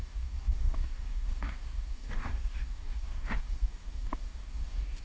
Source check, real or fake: fake